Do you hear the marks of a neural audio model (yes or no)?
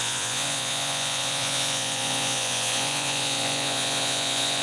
yes